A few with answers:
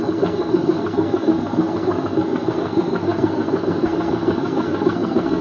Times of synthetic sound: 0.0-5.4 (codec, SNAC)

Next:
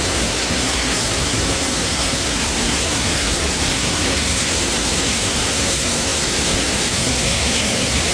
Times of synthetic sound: 0.0-8.1 (codec, SNAC)

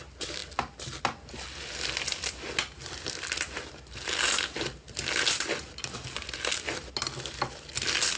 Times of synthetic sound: none